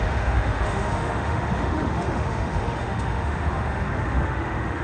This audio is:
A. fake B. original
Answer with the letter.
A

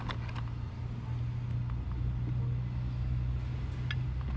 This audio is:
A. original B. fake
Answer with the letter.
A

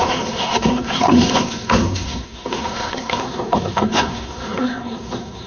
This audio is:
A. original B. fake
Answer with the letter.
B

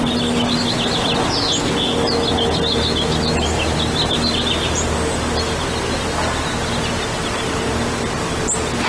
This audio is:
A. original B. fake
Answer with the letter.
A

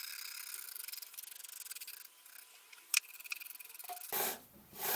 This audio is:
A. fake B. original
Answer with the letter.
B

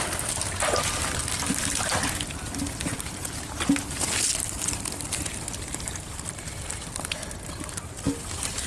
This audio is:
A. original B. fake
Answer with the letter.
A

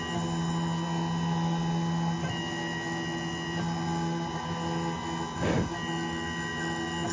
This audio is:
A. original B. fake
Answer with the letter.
A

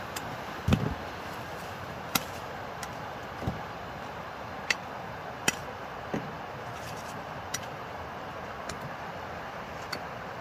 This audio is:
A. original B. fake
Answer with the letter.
A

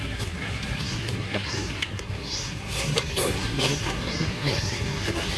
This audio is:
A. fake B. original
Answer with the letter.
A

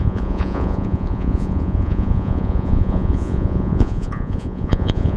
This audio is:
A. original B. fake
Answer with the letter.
B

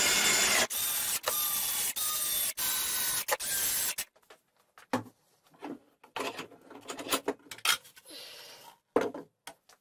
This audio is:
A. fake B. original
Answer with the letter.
B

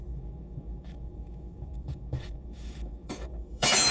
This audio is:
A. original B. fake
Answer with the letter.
B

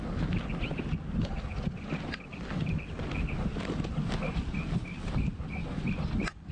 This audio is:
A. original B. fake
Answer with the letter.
A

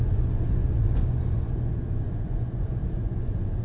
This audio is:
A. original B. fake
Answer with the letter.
B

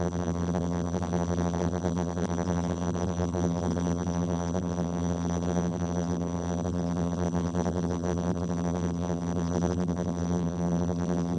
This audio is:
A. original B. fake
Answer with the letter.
B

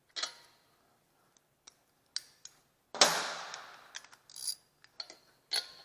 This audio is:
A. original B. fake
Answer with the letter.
A